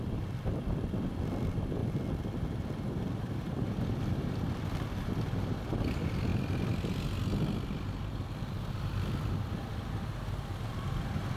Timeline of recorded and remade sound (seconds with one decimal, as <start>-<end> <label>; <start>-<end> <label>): 0.0-1.8 recorded; 1.8-4.4 remade; 4.4-11.4 recorded